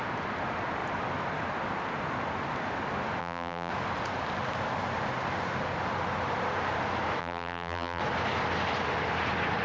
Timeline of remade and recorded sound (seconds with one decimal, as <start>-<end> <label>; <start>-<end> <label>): 0.0-3.2 recorded; 3.2-3.7 remade; 3.7-7.2 recorded; 7.2-8.0 remade; 8.0-9.6 recorded

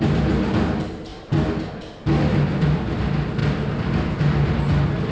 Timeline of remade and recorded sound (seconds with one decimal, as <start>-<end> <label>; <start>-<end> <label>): 0.0-5.1 recorded

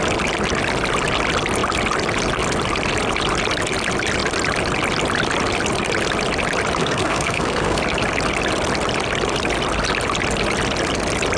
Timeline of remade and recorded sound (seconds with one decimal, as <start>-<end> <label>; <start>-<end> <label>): 0.0-6.8 recorded; 6.8-7.8 remade; 7.8-11.4 recorded

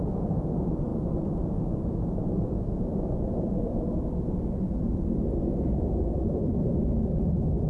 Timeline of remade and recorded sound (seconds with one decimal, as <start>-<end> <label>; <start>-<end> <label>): 0.0-7.7 remade

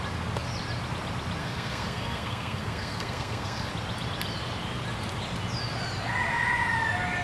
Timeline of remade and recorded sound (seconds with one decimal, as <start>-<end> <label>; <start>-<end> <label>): 0.0-1.4 recorded; 1.4-3.7 remade; 3.7-7.2 recorded

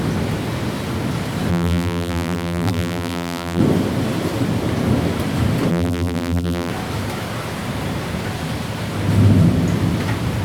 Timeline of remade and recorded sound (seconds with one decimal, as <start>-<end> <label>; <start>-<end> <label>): 0.0-1.5 recorded; 1.5-3.6 remade; 3.6-5.7 recorded; 5.7-6.7 remade; 6.7-10.4 recorded

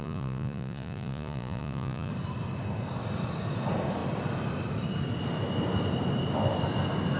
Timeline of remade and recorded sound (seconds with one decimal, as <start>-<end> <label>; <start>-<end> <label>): 0.0-2.1 remade; 2.1-7.2 recorded